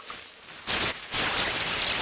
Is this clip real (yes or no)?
yes